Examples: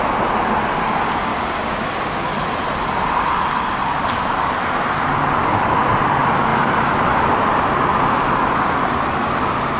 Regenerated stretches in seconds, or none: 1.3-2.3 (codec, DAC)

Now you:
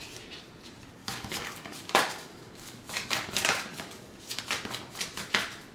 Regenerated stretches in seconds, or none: 1.0-4.4 (codec, DAC)